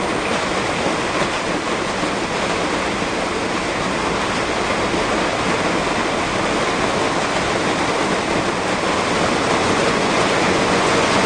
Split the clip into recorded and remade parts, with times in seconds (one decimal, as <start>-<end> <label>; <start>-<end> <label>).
0.0-9.6 recorded; 9.6-11.3 remade